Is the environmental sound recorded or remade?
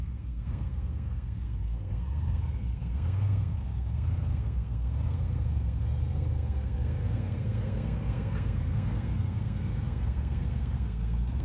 remade